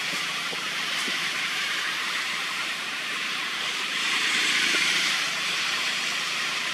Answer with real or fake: fake